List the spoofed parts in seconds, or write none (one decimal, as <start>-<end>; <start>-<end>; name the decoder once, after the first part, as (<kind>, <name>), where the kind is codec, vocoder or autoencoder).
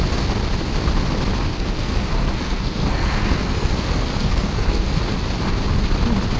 1.5-5.0 (codec, SNAC)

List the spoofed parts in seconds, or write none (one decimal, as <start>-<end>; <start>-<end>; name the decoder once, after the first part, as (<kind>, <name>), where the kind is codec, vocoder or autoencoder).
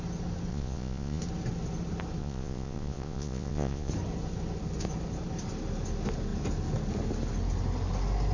0.5-1.2 (vocoder, Vocos); 2.2-3.9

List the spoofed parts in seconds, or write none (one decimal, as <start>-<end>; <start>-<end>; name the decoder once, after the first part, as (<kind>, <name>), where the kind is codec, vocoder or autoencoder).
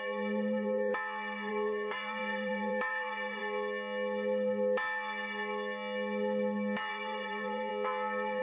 0.0-0.9 (vocoder, BigVGAN v2); 1.5-3.4; 6.9-7.7